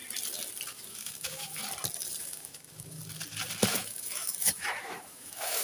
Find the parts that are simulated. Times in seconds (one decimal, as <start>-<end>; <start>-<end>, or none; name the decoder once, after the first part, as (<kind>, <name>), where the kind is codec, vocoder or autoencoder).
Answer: 0.7-1.6 (autoencoder, DAC-VAE); 2.2-3.0; 3.7-5.6